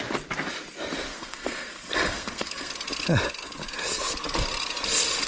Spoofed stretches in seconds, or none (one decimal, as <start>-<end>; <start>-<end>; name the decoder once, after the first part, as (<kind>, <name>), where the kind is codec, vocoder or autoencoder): 1.1-2.7 (codec, SNAC)